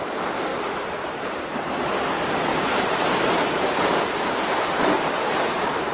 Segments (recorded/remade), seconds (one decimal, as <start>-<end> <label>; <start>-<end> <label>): 0.0-0.5 recorded; 0.5-1.9 remade; 1.9-2.5 recorded; 2.5-3.6 remade; 3.6-5.2 recorded; 5.2-5.9 remade